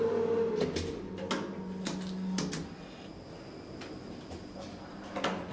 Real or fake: real